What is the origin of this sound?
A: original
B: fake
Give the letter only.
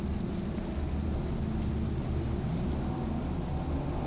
A